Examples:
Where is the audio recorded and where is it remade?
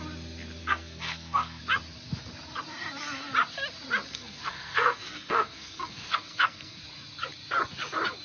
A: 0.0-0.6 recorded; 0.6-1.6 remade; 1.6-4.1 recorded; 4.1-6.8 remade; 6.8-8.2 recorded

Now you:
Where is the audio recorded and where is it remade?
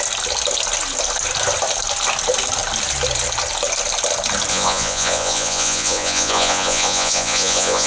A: 0.0-4.5 recorded; 4.5-7.9 remade